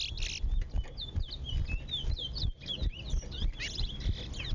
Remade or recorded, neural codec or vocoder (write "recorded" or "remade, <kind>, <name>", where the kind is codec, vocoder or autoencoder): recorded